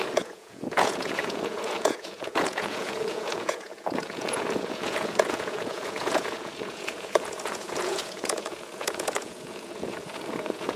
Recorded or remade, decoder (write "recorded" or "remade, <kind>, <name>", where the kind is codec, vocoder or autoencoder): remade, vocoder, Vocos